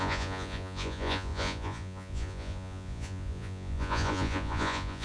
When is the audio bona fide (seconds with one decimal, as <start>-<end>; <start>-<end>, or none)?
none